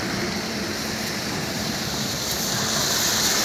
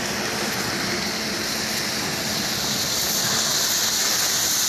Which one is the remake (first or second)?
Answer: first